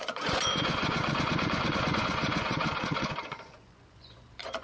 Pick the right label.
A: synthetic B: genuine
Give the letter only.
A